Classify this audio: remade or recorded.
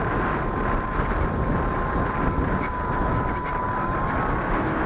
recorded